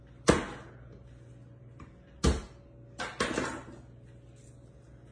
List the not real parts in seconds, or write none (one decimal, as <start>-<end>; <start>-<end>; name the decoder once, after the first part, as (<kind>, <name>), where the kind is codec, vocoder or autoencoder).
none